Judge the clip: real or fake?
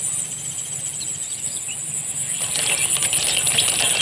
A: real